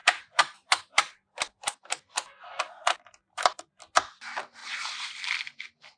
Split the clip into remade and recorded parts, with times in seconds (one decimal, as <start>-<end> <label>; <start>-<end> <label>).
0.0-3.6 remade; 3.6-4.6 recorded; 4.6-5.4 remade; 5.4-6.0 recorded